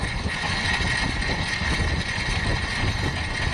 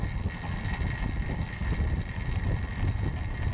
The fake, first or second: first